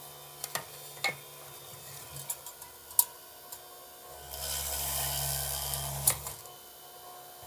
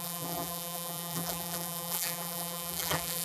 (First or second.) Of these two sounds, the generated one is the second